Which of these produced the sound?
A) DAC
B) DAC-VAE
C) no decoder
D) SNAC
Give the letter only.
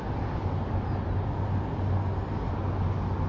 C